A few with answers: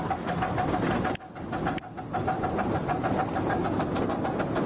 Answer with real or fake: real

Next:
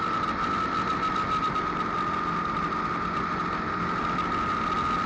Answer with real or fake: real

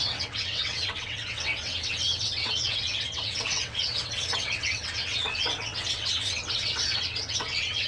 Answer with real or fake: fake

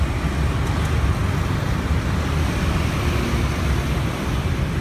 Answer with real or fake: real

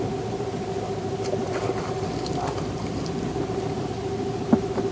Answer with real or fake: fake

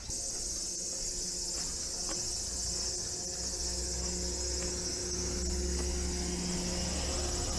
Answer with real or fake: real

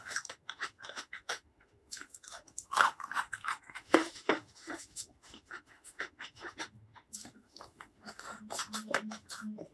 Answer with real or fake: fake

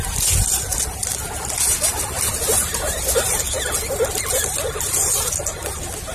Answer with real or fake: real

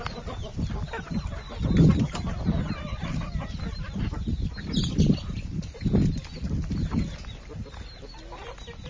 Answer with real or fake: real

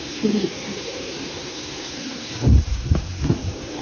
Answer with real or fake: fake